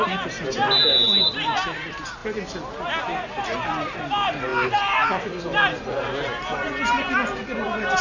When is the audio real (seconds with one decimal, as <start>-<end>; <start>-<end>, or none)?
0.0-8.0